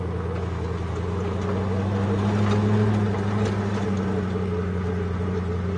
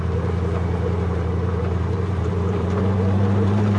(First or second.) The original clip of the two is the first